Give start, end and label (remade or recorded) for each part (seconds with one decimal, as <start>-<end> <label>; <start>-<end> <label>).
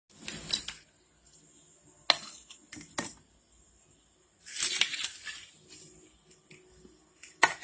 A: 0.0-3.9 recorded; 3.9-4.6 remade; 4.6-7.6 recorded